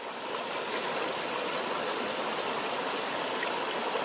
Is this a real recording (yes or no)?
yes